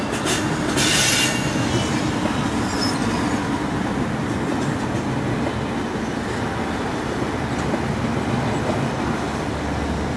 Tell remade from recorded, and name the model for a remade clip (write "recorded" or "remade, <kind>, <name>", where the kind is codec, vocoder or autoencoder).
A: recorded